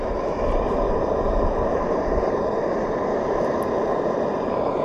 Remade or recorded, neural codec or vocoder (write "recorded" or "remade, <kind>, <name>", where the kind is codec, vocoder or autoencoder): remade, vocoder, BigVGAN v2